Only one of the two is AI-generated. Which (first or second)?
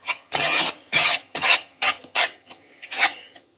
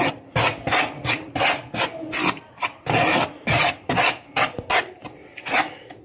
first